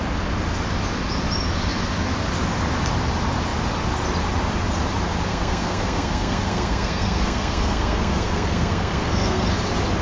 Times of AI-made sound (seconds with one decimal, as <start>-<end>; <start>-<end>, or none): 5.3-9.5